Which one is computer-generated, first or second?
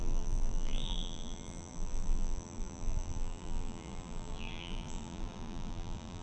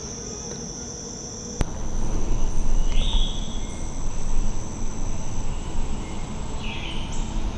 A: first